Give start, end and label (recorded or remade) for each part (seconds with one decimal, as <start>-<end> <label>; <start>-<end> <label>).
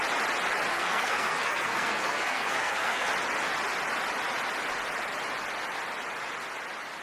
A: 0.0-0.7 recorded; 0.7-3.1 remade; 3.1-7.0 recorded